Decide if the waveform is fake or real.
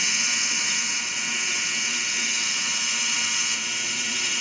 fake